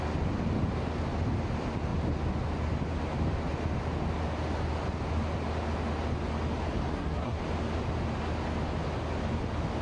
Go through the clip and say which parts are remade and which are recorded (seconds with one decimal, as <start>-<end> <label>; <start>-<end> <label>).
0.0-6.9 recorded; 6.9-7.4 remade; 7.4-9.8 recorded